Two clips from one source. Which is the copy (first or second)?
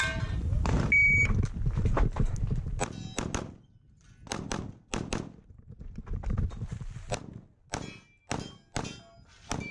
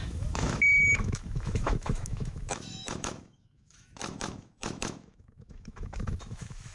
second